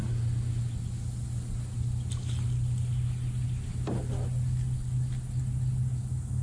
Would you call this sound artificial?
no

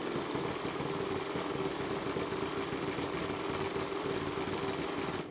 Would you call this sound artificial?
no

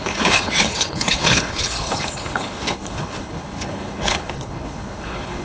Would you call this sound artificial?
yes